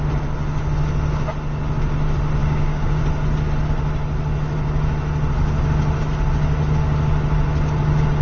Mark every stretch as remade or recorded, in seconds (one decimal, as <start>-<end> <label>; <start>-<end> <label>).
0.0-2.4 recorded; 2.4-3.0 remade; 3.0-8.2 recorded